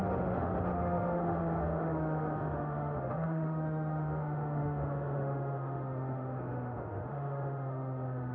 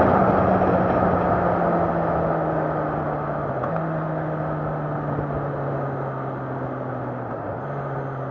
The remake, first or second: first